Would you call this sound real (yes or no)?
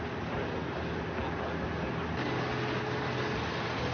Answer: yes